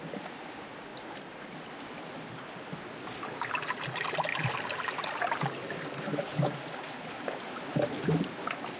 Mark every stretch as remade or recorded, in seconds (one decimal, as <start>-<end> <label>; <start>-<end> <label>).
0.0-8.8 recorded